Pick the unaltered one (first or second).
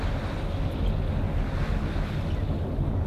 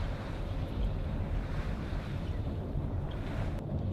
first